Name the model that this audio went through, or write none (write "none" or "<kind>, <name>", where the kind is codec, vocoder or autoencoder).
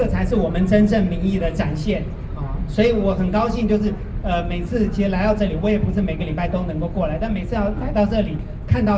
none